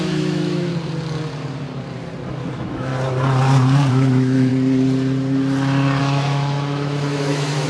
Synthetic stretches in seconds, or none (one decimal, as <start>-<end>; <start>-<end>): 0.0-0.7; 2.5-2.9; 3.9-4.5; 6.0-7.7